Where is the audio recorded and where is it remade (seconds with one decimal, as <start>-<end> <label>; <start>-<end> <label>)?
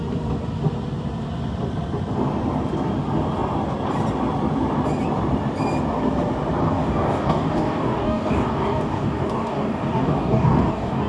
0.0-6.6 recorded; 6.6-11.1 remade